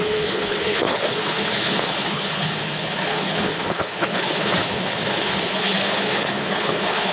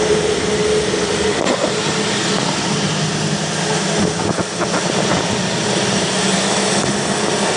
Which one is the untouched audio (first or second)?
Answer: second